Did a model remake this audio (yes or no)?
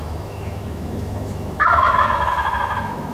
yes